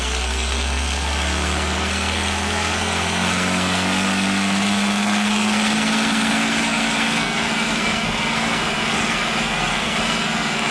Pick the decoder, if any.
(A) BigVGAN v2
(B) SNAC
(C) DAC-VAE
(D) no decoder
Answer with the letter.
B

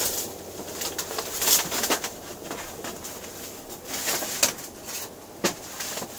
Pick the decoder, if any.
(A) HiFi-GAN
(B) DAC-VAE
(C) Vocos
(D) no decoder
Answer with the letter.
D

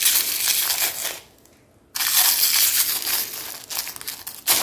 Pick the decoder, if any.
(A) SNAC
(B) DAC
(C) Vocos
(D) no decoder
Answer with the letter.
D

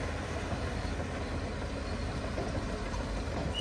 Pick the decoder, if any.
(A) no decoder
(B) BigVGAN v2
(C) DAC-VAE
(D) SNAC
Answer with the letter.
A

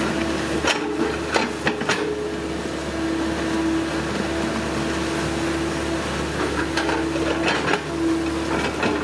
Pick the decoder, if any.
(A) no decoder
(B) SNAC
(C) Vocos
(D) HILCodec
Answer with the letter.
A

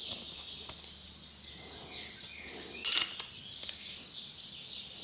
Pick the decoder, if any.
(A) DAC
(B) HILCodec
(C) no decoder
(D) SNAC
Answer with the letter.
C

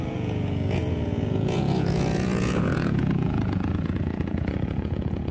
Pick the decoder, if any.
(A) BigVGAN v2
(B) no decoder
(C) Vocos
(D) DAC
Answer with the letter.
C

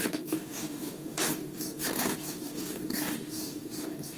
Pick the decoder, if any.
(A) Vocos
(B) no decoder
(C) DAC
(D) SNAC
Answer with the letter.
C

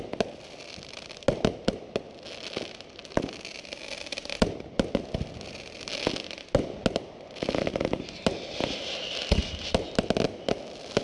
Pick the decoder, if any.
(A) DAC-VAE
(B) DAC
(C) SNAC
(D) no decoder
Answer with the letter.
D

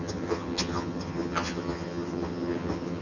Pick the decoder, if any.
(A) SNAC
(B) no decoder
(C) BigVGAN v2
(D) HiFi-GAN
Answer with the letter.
D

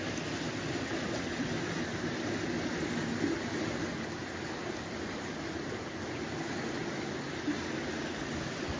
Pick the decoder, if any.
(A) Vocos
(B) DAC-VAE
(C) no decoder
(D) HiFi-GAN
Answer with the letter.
C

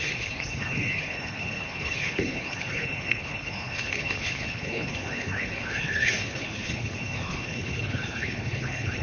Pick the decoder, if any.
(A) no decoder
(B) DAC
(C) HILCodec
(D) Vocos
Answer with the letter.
C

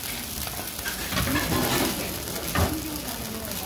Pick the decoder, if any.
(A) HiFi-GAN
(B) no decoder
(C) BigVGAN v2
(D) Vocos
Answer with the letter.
B